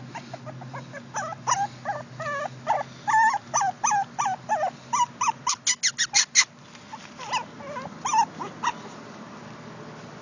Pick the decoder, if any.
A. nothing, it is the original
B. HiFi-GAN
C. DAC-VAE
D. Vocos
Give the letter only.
A